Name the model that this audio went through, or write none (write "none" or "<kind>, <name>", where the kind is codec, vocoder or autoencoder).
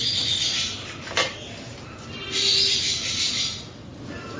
none